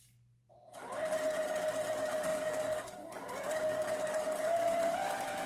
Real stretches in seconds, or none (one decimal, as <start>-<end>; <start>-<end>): 0.4-1.9